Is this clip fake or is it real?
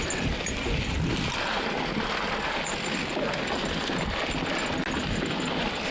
real